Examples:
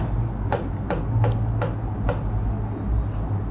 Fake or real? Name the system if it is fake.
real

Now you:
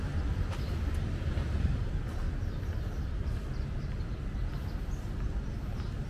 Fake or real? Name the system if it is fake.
real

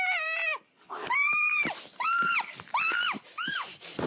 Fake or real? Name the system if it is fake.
fake, vocoder, BigVGAN v2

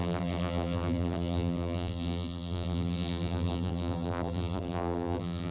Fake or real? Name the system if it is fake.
fake, vocoder, BigVGAN v2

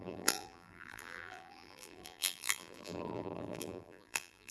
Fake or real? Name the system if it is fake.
fake, vocoder, BigVGAN v2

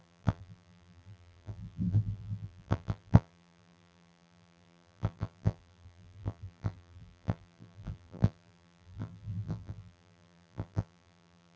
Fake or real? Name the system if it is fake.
fake, vocoder, BigVGAN v2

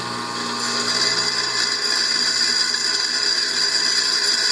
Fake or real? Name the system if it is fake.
real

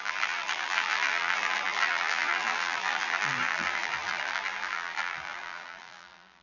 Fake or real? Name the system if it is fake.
fake, vocoder, BigVGAN v2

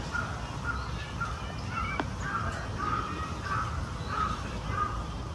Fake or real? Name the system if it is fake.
real